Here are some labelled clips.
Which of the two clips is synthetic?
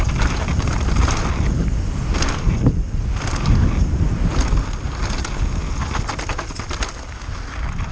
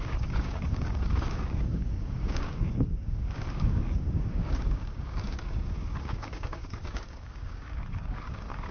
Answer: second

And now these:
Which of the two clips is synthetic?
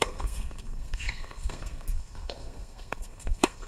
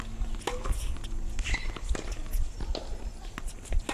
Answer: first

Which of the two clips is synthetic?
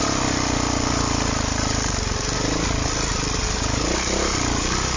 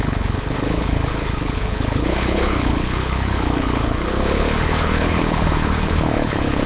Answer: second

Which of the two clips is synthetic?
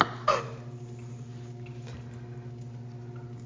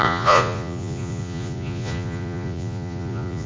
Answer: second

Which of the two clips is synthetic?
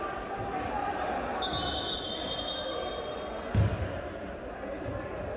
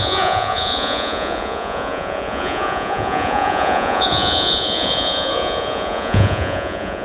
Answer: second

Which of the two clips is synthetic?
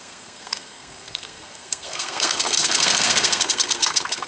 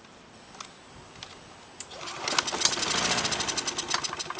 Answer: first